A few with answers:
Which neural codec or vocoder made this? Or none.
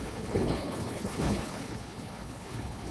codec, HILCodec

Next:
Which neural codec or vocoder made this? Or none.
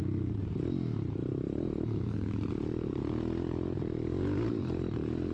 none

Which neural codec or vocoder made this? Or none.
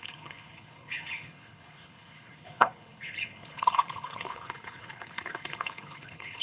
codec, HILCodec